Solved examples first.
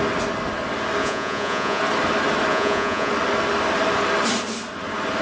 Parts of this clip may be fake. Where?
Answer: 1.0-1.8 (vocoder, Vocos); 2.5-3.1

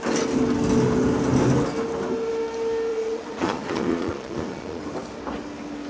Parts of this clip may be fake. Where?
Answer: 2.9-4.8 (vocoder, Vocos)